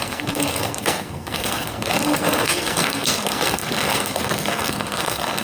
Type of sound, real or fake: fake